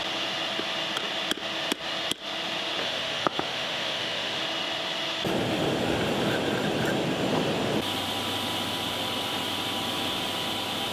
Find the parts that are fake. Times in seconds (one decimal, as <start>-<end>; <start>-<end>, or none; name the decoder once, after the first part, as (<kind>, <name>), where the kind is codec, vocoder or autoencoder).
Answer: 2.8-4.4 (autoencoder, DAC-VAE)